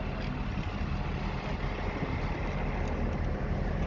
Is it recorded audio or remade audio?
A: recorded